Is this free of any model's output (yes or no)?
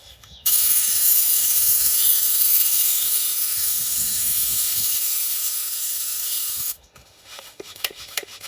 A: no